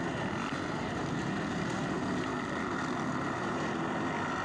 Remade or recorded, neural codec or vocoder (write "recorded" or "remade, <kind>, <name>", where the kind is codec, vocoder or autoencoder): recorded